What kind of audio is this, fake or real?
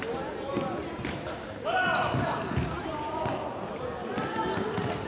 real